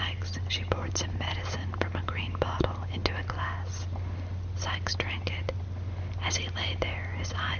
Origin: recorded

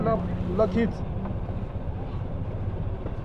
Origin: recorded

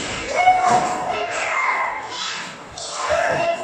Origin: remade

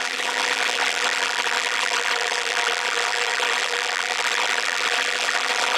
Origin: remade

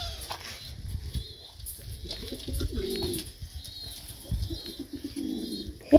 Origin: recorded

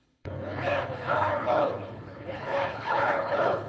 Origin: remade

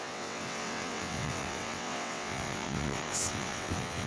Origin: remade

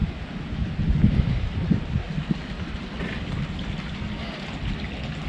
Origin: recorded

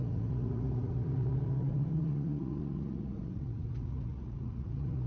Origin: remade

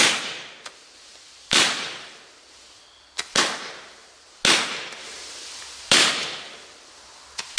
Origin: recorded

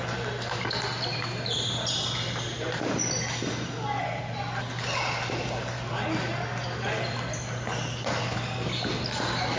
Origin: recorded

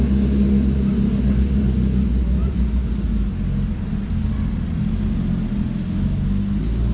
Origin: recorded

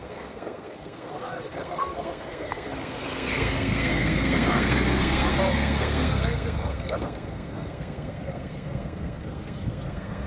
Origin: remade